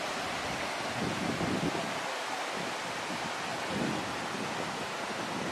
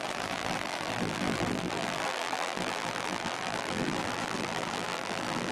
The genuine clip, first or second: first